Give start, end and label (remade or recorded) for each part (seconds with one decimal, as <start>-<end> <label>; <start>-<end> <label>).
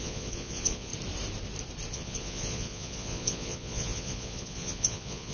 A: 0.0-0.9 remade; 0.9-1.9 recorded; 1.9-5.3 remade